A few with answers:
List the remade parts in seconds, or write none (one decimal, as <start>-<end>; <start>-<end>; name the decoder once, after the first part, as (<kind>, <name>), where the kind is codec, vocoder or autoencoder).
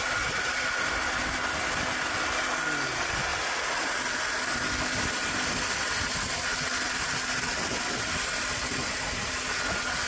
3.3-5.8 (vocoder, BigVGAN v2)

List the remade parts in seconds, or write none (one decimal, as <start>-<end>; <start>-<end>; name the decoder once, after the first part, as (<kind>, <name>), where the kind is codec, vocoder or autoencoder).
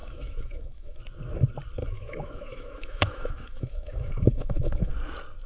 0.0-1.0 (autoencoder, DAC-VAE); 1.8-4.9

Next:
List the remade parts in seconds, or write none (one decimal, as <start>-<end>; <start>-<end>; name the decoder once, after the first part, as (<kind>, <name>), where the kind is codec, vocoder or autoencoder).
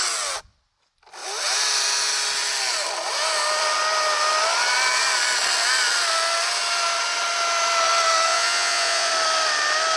8.3-9.1 (vocoder, Vocos)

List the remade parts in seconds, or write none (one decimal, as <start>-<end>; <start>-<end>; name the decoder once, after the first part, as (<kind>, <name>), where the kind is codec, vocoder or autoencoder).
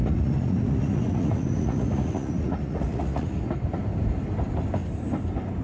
0.0-3.4 (vocoder, Vocos)